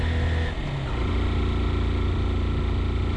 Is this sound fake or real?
real